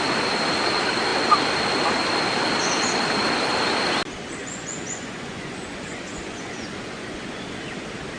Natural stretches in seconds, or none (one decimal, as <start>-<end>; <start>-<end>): 0.0-4.4; 7.6-8.2